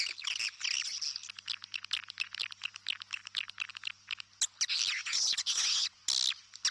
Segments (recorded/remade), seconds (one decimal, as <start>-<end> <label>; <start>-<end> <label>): 0.0-5.0 recorded; 5.0-6.0 remade; 6.0-6.7 recorded